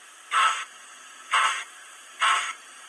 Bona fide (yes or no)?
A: yes